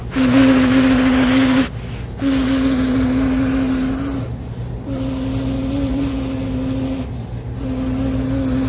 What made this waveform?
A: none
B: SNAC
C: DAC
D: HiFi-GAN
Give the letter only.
A